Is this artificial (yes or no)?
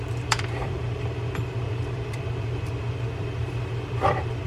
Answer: yes